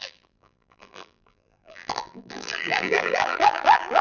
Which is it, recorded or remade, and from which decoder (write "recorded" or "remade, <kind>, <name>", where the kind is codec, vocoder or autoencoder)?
remade, vocoder, BigVGAN v2